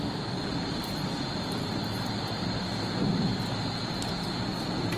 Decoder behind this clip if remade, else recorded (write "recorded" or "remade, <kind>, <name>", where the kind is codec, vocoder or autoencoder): recorded